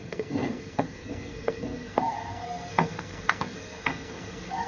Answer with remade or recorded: remade